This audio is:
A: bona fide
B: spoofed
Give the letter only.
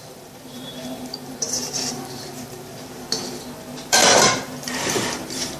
B